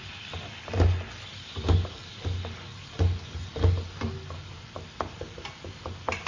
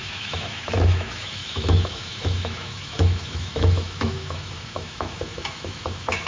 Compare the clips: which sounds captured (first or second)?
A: first